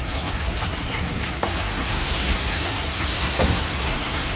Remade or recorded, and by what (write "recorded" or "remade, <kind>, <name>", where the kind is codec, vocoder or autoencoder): remade, codec, SNAC